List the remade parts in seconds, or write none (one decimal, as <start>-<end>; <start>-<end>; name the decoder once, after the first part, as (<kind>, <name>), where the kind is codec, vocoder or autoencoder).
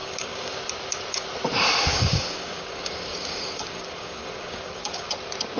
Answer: 0.0-0.6 (codec, DAC); 1.9-5.1